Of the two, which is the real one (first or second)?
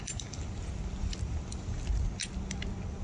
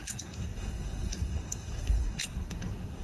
first